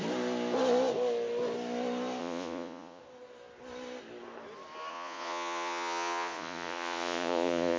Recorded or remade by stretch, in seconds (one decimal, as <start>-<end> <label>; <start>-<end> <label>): 0.0-2.2 recorded; 2.2-3.0 remade; 3.0-4.9 recorded; 4.9-7.8 remade